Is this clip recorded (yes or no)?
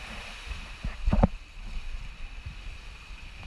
yes